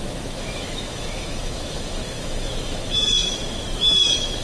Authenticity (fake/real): fake